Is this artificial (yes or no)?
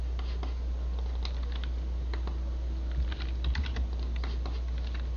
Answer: no